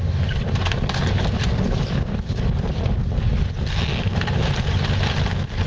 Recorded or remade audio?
recorded